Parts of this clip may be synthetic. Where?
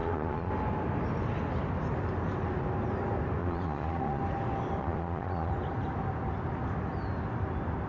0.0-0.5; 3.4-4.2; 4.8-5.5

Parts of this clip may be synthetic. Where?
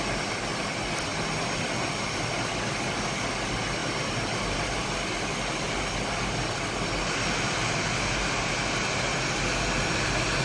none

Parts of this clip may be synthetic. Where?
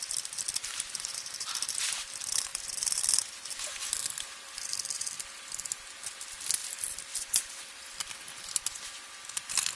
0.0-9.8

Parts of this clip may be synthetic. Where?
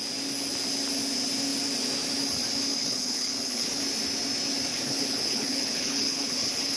2.8-3.8; 4.7-6.8